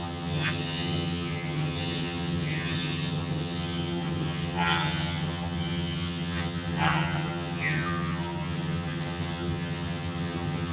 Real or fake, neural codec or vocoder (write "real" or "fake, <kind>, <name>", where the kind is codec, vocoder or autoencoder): fake, vocoder, HiFi-GAN